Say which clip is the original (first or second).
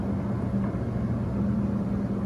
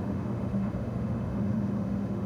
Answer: first